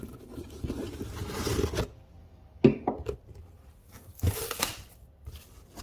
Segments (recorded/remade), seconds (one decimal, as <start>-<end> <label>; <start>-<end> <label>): 0.0-2.2 recorded; 2.2-2.9 remade; 2.9-3.8 recorded; 3.8-4.4 remade; 4.4-5.8 recorded